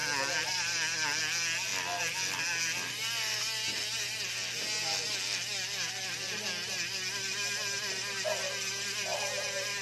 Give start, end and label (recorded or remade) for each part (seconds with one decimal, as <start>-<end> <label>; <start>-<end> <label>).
0.0-1.2 remade; 1.2-9.8 recorded